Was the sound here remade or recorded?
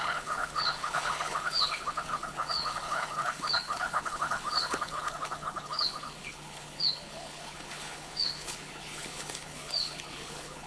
remade